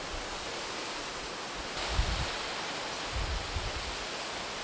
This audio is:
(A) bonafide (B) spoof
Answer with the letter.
A